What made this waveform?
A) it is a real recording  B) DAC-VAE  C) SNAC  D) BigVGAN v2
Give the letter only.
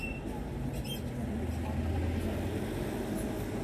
A